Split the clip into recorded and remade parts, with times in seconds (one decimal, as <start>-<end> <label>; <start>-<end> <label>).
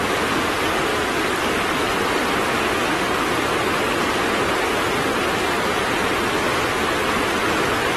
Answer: 0.0-8.0 recorded